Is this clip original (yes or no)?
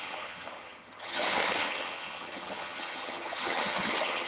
no